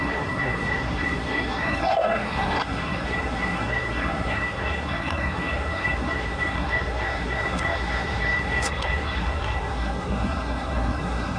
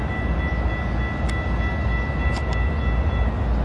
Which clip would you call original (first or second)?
second